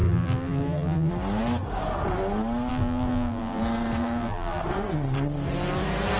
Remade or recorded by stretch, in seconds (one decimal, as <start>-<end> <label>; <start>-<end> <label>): 0.0-1.1 remade; 1.1-2.7 recorded; 2.7-3.6 remade; 3.6-4.0 recorded; 4.0-4.6 remade; 4.6-6.2 recorded